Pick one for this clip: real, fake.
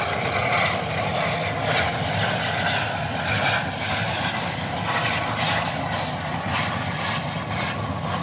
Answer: real